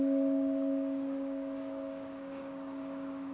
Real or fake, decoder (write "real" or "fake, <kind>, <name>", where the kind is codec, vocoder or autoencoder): fake, codec, DAC